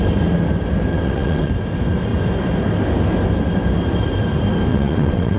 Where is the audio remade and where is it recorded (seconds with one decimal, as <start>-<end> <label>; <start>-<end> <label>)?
0.0-0.9 recorded; 0.9-1.5 remade; 1.5-4.7 recorded; 4.7-5.4 remade